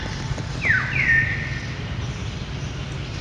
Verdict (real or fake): real